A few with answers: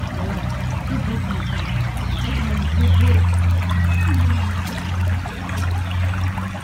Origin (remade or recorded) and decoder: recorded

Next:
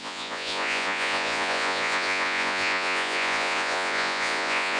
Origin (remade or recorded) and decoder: remade, vocoder, Vocos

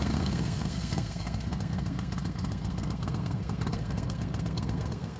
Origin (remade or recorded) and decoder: remade, codec, SNAC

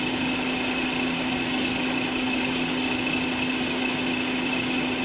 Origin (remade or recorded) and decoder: recorded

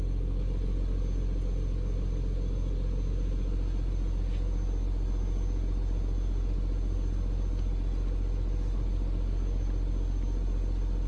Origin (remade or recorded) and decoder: recorded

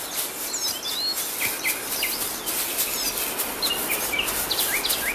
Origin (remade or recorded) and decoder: recorded